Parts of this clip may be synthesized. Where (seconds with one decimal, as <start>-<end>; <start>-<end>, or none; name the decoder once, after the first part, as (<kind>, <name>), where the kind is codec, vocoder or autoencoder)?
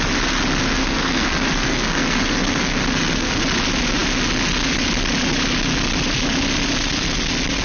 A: 0.8-3.4 (codec, SNAC)